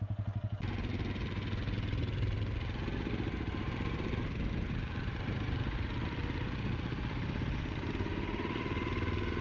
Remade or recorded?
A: recorded